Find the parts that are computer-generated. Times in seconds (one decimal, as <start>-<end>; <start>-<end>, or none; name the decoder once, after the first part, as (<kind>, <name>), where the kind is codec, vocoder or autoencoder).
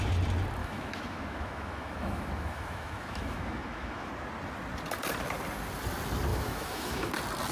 0.6-4.1 (autoencoder, DAC-VAE); 6.3-7.1